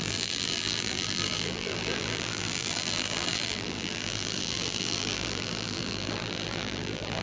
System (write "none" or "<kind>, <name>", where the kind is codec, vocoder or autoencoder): vocoder, BigVGAN v2